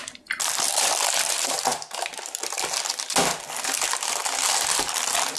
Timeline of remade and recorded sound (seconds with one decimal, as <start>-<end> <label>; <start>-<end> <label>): 0.0-5.4 recorded